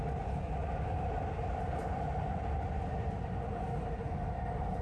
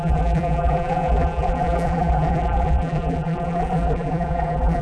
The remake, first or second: second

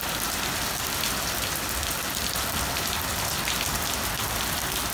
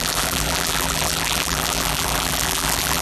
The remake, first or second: second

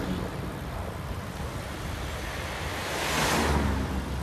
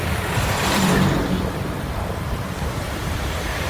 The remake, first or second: second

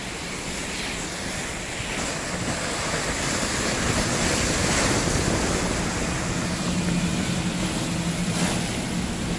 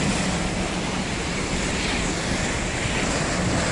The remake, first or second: second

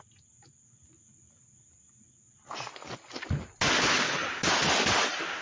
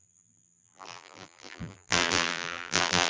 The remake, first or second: second